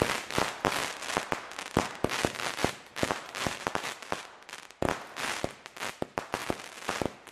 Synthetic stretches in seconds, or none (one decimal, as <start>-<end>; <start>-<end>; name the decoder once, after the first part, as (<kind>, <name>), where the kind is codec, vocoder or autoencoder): 2.6-4.2 (vocoder, BigVGAN v2)